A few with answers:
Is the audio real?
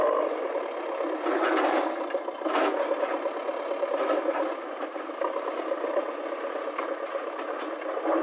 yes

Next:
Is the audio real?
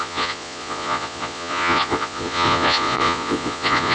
no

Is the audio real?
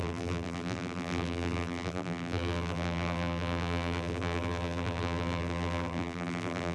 no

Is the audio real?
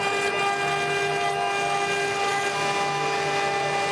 yes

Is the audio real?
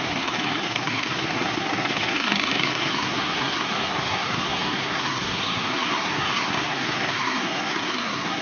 no